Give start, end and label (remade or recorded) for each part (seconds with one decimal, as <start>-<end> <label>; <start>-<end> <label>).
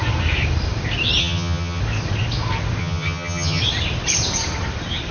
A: 0.0-1.2 recorded; 1.2-1.8 remade; 1.8-2.8 recorded; 2.8-3.6 remade; 3.6-5.1 recorded